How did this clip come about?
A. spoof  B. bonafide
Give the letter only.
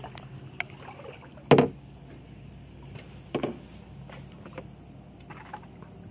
B